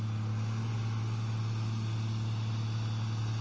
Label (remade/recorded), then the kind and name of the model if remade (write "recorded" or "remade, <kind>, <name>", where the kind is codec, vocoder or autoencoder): recorded